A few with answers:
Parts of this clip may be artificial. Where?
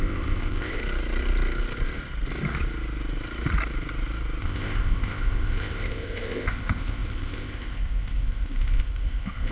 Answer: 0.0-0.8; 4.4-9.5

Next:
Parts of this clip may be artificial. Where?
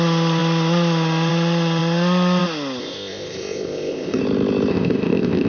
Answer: 2.8-4.2; 4.7-5.5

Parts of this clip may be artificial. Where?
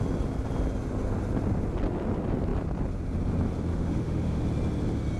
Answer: 3.7-4.4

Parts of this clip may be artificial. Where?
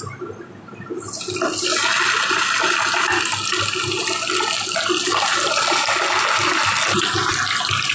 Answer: none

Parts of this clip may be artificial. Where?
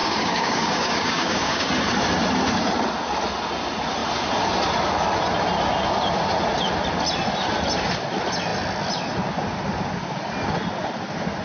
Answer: 0.0-1.7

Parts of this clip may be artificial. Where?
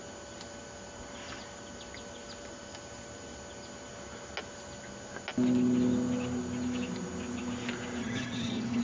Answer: 8.0-8.8